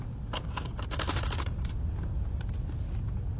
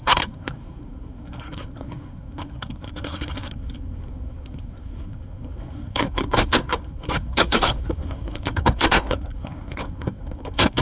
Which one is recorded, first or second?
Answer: first